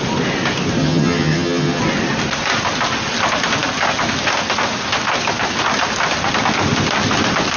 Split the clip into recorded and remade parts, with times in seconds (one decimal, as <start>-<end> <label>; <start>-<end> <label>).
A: 0.0-0.8 recorded; 0.8-1.8 remade; 1.8-7.6 recorded